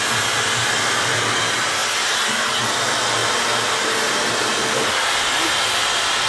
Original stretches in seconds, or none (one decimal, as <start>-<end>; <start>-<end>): 0.0-3.2; 5.4-6.3